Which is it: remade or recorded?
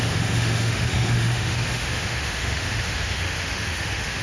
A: remade